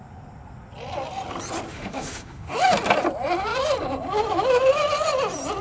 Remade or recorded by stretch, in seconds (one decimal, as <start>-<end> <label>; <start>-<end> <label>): 0.0-1.7 recorded; 1.7-2.6 remade; 2.6-5.6 recorded